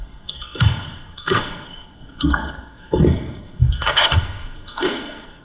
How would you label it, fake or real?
fake